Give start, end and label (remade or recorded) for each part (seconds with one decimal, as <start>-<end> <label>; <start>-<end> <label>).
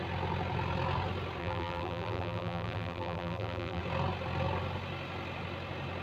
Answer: 0.0-1.4 recorded; 1.4-3.8 remade; 3.8-6.0 recorded